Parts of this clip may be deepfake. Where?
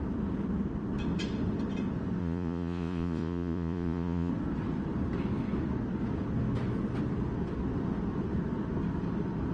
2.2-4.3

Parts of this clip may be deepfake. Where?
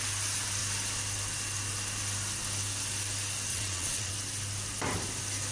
3.5-4.1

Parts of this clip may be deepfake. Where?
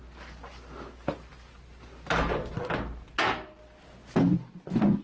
none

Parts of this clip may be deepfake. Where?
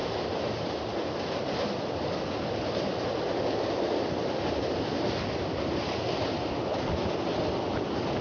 none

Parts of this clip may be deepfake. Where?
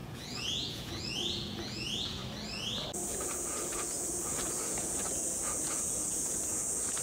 0.0-2.2; 3.1-7.0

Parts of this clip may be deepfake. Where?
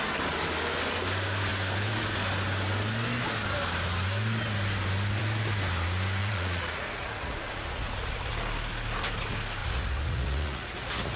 6.2-8.3; 9.6-11.2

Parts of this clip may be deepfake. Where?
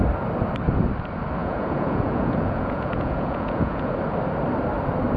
1.4-3.9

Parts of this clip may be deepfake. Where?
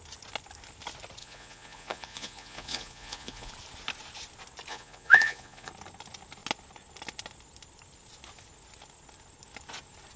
1.2-3.5; 4.7-5.7